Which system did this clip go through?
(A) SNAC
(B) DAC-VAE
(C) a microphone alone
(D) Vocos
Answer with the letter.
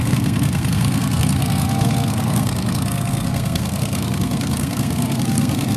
A